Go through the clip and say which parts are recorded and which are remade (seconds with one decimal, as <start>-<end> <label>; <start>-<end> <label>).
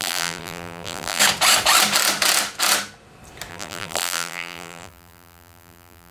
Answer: 0.0-1.2 remade; 1.2-3.5 recorded; 3.5-6.1 remade